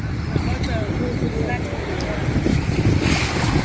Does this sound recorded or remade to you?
recorded